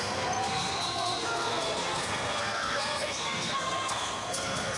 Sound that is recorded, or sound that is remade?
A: remade